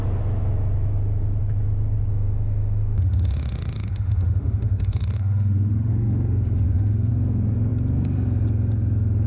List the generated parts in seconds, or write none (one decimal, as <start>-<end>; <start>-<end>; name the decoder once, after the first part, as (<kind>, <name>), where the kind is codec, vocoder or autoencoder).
2.1-7.1 (autoencoder, DAC-VAE)